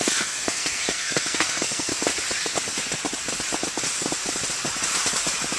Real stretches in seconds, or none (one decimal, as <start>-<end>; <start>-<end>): 1.9-5.6